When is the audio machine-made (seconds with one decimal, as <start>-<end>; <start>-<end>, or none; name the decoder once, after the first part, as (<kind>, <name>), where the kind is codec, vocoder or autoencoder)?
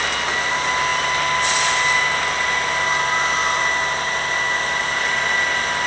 none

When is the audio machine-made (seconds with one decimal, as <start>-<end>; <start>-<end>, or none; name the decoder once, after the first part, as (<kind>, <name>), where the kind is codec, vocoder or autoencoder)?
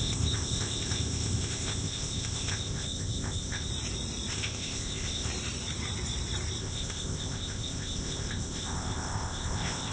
0.0-3.7 (codec, ZipCodec); 4.3-5.3; 6.6-9.9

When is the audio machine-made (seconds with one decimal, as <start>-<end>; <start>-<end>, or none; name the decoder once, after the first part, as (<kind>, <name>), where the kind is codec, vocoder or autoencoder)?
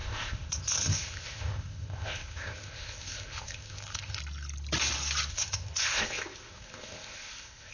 0.0-4.2 (codec, ZipCodec); 5.3-7.7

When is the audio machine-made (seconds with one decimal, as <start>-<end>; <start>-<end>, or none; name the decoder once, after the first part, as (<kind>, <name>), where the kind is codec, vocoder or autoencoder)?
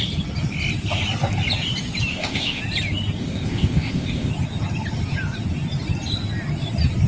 2.1-2.6 (codec, ZipCodec); 3.2-4.3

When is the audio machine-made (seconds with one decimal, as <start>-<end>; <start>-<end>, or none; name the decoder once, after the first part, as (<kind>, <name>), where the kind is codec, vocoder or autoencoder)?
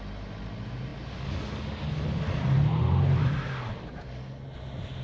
none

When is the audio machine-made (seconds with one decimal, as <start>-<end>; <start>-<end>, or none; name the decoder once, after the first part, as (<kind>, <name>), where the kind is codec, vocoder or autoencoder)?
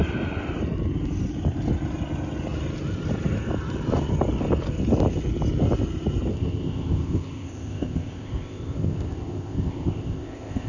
6.3-10.7 (codec, ZipCodec)